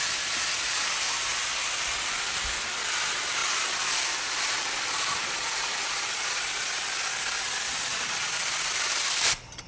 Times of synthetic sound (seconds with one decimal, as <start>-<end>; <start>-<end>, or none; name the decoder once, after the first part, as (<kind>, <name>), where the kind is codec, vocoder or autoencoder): none